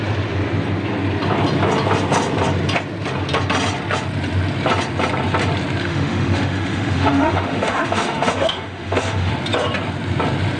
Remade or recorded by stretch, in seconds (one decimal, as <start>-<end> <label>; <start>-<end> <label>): 0.0-5.8 recorded; 5.8-9.3 remade; 9.3-10.6 recorded